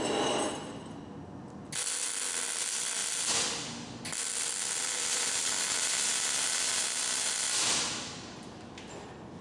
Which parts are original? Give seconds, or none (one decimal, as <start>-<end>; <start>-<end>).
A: 0.0-9.4